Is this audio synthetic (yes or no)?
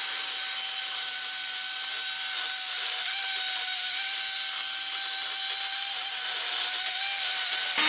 no